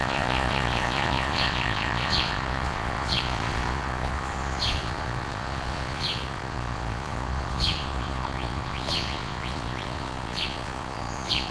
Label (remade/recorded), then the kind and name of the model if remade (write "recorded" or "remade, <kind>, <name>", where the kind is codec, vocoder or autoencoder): remade, vocoder, Vocos